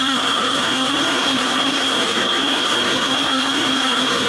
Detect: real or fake fake